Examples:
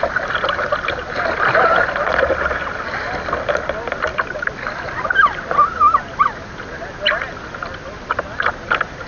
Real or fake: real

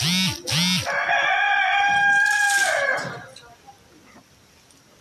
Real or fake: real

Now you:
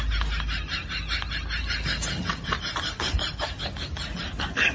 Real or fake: real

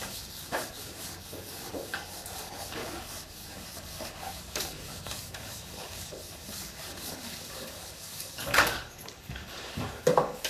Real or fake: fake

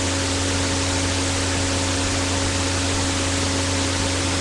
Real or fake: real